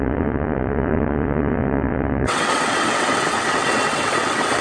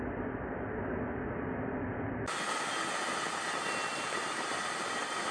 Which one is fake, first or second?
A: first